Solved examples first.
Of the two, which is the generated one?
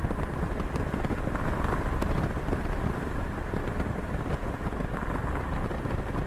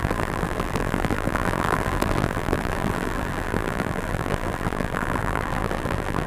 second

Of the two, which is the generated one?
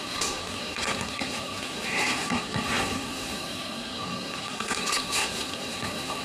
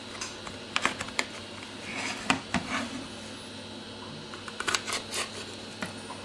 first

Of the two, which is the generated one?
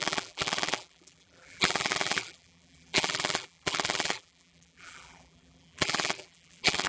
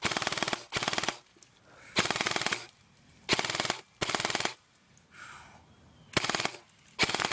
first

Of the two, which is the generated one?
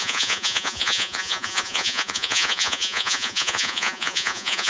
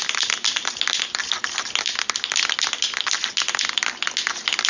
first